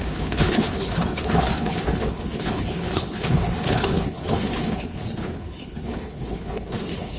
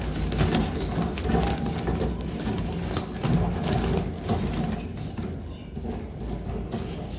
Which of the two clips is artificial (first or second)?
first